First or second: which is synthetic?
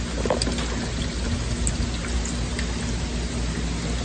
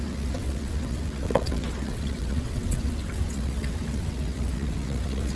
second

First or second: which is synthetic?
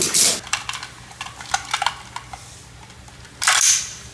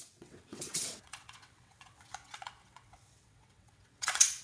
second